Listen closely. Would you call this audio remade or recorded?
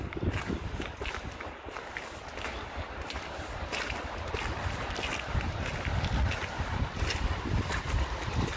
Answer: recorded